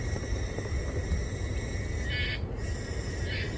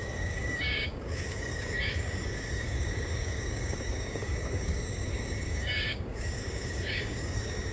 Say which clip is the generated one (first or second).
second